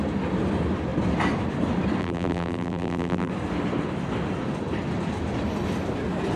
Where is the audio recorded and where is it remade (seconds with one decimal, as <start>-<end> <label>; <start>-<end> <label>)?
0.0-2.0 recorded; 2.0-3.3 remade; 3.3-6.4 recorded